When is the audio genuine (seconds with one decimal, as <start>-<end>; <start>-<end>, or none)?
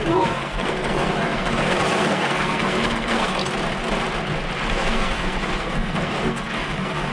3.4-4.7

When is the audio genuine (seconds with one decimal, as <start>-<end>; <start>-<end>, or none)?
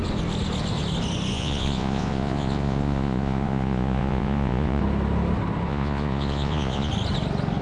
0.0-1.3; 4.8-5.7; 6.9-7.6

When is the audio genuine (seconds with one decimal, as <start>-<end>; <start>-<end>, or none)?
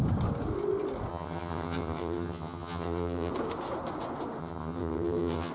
0.0-1.1; 3.3-4.4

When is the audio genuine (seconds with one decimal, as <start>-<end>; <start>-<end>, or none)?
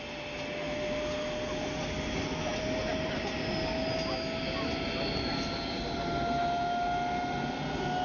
0.0-2.5; 3.2-8.0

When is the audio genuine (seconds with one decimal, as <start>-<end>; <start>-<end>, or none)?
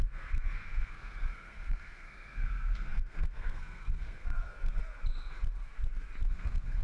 4.8-6.3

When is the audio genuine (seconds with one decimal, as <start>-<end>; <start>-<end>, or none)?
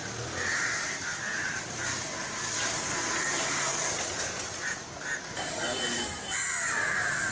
0.0-7.3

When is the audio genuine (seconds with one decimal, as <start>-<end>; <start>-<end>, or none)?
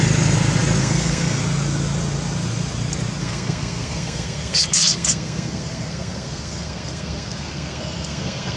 0.0-0.8; 1.4-3.2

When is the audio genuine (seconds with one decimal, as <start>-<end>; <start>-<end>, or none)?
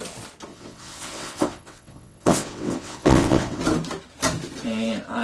0.0-0.5; 3.6-5.2